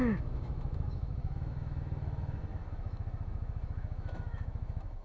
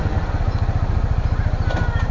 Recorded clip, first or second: second